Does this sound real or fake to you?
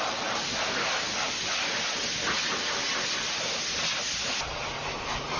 real